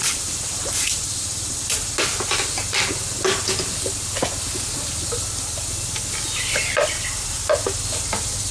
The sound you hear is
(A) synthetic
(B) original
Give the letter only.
B